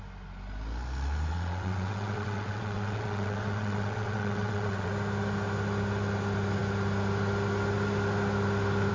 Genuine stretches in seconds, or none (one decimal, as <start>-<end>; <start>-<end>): 0.0-1.3; 4.9-8.9